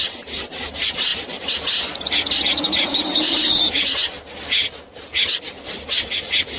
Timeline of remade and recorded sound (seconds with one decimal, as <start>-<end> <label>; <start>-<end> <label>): 0.0-6.6 recorded